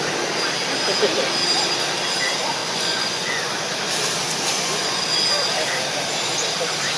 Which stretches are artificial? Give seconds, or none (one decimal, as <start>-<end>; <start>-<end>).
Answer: 2.6-3.6; 4.5-5.0